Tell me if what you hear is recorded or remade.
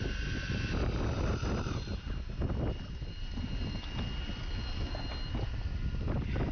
recorded